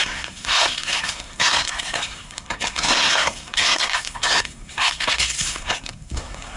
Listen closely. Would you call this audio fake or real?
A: fake